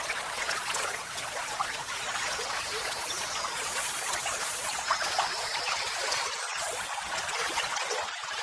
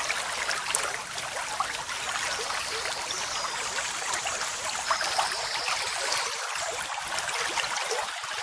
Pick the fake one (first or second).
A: first